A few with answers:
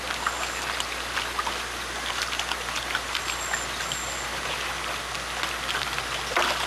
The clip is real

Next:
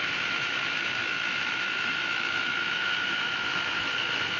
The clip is fake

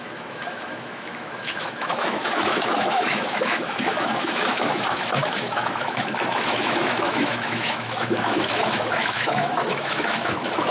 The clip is fake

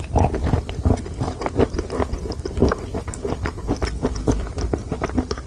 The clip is real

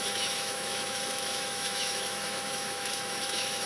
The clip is fake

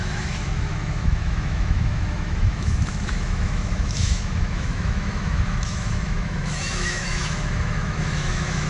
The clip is fake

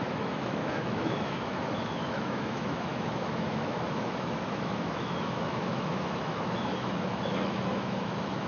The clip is fake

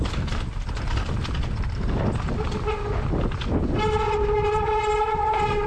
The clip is real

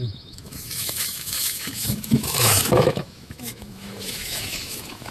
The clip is fake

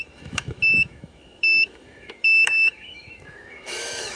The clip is fake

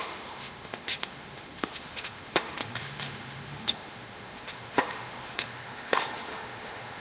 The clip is fake